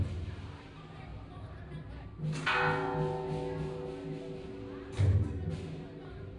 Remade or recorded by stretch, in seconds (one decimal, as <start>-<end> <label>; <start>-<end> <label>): 0.0-1.1 remade; 1.1-4.9 recorded; 4.9-6.4 remade